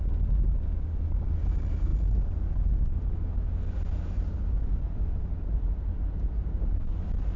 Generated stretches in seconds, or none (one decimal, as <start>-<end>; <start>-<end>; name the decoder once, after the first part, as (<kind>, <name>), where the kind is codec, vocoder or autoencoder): none